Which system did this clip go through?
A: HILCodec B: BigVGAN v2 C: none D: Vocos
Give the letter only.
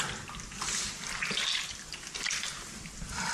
C